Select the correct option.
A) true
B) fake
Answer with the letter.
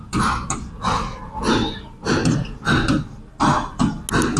A